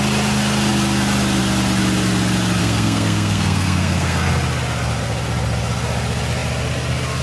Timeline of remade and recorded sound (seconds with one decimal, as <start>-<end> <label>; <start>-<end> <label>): 0.0-2.6 recorded; 2.6-4.3 remade; 4.3-7.2 recorded